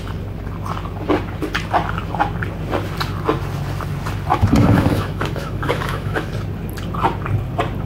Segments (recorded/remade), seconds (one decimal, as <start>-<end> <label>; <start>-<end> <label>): 0.0-4.3 recorded; 4.3-6.3 remade; 6.3-7.9 recorded